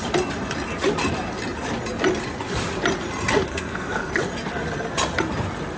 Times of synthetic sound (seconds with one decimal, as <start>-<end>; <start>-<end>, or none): 3.5-4.1